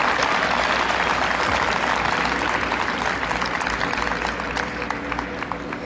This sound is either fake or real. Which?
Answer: real